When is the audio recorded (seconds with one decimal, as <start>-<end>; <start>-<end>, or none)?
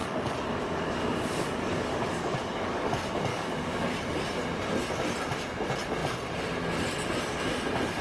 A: 2.9-3.3; 3.8-8.0